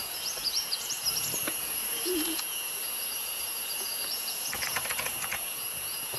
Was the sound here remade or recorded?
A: remade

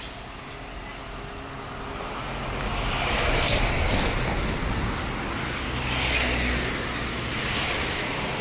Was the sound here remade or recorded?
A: recorded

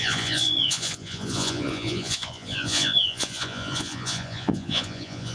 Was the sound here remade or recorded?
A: remade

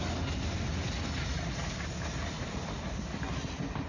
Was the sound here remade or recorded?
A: recorded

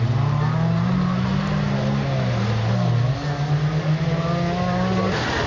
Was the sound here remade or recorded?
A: recorded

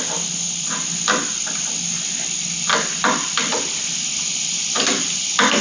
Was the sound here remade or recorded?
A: recorded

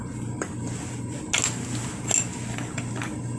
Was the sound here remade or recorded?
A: recorded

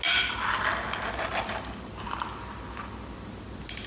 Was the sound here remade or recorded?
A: recorded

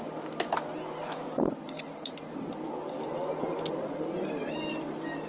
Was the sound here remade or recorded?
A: recorded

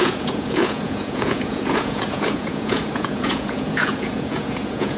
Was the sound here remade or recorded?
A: remade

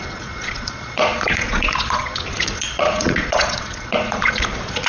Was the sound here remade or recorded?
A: remade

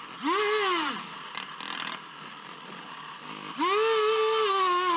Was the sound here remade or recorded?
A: recorded